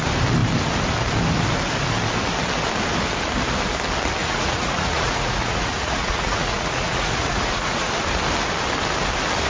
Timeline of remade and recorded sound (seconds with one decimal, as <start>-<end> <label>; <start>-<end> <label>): 0.0-4.2 recorded; 4.2-7.9 remade; 7.9-9.5 recorded